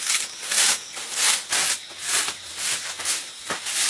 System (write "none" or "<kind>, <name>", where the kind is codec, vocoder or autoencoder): none